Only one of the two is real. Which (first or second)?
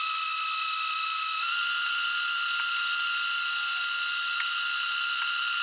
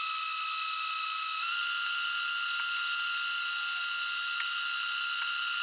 second